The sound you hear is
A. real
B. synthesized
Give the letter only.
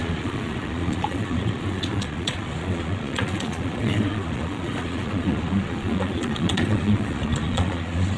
B